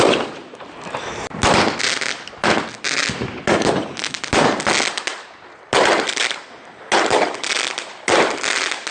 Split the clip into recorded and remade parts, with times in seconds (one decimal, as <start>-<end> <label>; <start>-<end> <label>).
0.0-8.9 recorded